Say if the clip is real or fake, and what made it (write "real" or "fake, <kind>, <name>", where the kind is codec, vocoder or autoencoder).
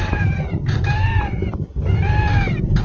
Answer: fake, vocoder, BigVGAN v2